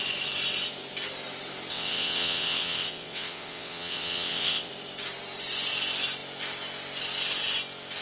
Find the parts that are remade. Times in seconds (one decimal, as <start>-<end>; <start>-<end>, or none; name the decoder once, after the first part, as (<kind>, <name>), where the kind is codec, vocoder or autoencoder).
1.7-4.7 (vocoder, WaveNeXt)